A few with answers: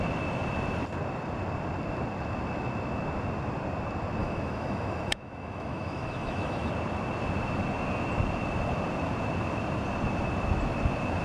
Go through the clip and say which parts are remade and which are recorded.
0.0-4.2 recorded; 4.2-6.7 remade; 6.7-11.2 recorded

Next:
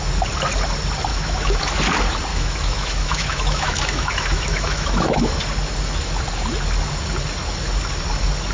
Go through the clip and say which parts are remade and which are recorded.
0.0-1.1 recorded; 1.1-1.6 remade; 1.6-2.3 recorded; 2.3-5.4 remade; 5.4-8.5 recorded

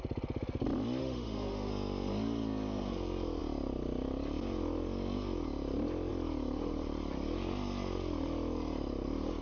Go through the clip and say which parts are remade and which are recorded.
0.0-1.0 recorded; 1.0-1.7 remade; 1.7-9.4 recorded

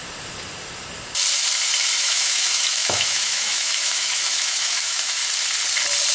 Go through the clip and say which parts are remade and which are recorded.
0.0-2.0 recorded; 2.0-5.2 remade; 5.2-6.1 recorded

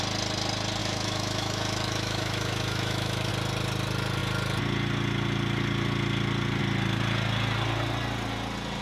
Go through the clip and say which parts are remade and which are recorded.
0.0-0.8 recorded; 0.8-3.3 remade; 3.3-8.8 recorded

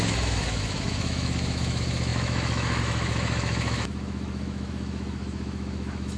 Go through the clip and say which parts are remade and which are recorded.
0.0-6.2 remade

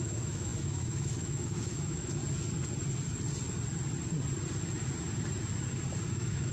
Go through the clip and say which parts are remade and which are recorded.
0.0-2.2 remade; 2.2-6.1 recorded; 6.1-6.5 remade